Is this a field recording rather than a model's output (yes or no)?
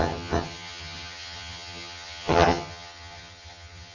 no